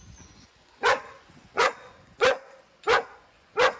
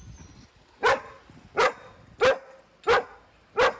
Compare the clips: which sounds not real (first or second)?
first